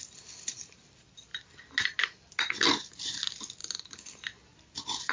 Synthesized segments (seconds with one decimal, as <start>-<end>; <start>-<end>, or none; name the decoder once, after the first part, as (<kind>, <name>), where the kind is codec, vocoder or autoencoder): none